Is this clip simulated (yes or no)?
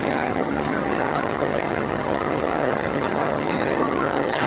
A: yes